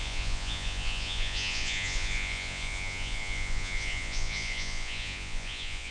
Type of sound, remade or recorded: remade